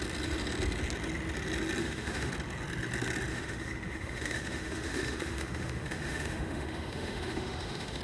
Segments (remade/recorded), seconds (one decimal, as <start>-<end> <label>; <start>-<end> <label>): 0.0-1.8 recorded; 1.8-2.3 remade; 2.3-3.3 recorded; 3.3-8.0 remade